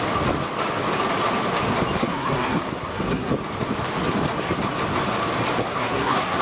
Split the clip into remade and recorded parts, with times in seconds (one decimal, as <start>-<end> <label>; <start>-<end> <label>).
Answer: 0.0-2.0 recorded; 2.0-3.3 remade; 3.3-5.6 recorded; 5.6-6.4 remade